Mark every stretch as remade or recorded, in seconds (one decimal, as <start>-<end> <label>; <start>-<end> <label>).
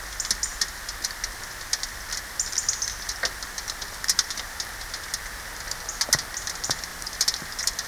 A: 0.0-6.9 recorded; 6.9-7.4 remade; 7.4-7.9 recorded